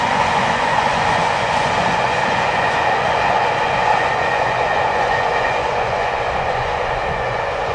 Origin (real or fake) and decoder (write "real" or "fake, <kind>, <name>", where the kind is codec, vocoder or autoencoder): fake, vocoder, Vocos